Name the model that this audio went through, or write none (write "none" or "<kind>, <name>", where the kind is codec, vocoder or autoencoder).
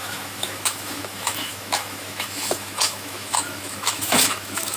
autoencoder, DAC-VAE